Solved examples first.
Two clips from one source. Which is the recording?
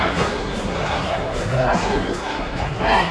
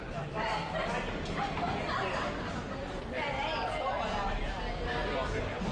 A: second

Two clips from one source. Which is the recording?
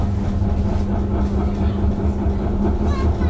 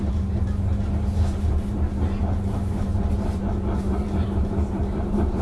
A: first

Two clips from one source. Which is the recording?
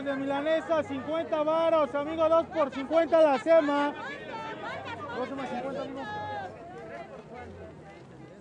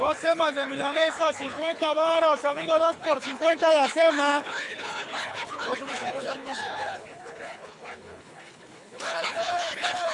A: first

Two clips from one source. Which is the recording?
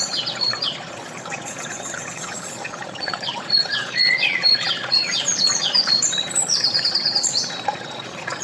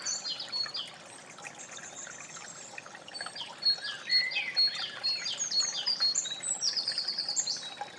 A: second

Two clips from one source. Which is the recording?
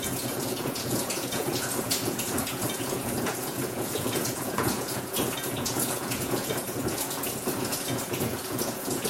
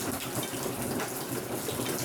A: second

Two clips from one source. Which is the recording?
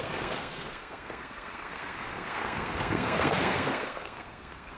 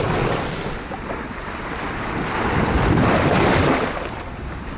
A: second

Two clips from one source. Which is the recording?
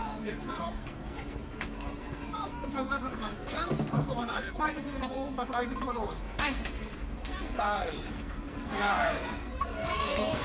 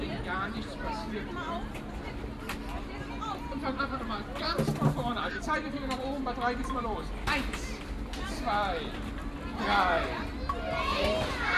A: second